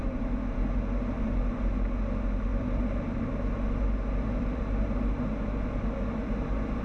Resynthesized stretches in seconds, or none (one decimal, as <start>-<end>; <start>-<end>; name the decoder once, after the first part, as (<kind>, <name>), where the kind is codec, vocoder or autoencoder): 2.5-4.6 (vocoder, BigVGAN v2)